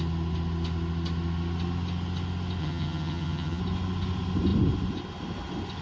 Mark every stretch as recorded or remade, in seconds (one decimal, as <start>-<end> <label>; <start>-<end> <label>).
0.0-2.6 recorded; 2.6-3.6 remade; 3.6-5.8 recorded